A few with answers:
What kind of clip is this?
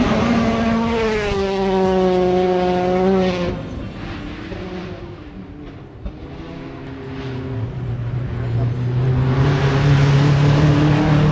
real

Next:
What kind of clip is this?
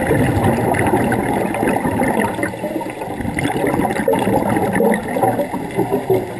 real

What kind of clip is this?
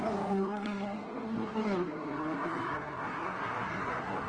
fake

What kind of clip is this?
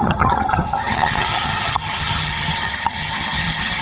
fake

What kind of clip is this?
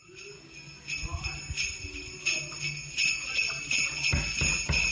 real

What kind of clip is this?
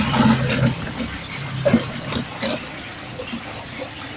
fake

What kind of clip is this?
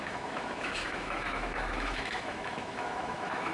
fake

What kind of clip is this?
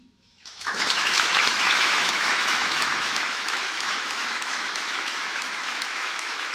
fake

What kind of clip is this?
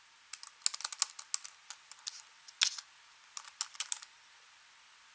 real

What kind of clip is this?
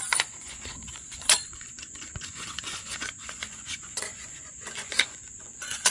fake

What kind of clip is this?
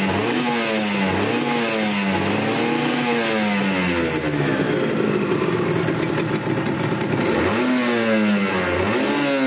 real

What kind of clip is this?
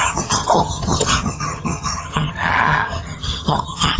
fake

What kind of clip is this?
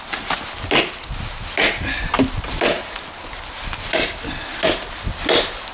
real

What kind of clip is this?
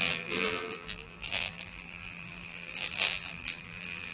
fake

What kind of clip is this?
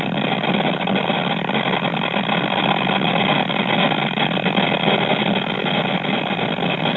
real